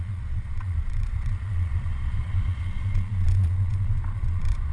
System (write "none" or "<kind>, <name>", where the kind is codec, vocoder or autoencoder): vocoder, Vocos